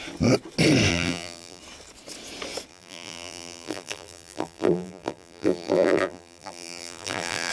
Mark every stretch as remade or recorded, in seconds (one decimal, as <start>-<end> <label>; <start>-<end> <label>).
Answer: 0.0-0.9 recorded; 0.9-1.6 remade; 1.6-2.7 recorded; 2.7-7.5 remade